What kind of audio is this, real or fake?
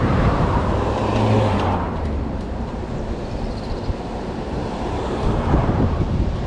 fake